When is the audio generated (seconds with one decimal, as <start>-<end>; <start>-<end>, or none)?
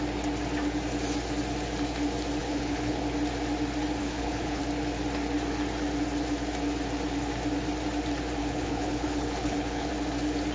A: 2.4-3.0; 4.0-4.6; 8.4-9.9